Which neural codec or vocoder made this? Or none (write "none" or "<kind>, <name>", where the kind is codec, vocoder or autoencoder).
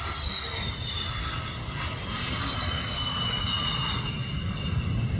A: none